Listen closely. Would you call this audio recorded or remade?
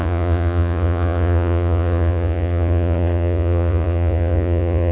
remade